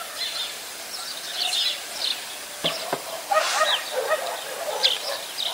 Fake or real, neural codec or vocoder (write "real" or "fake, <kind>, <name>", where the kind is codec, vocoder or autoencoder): real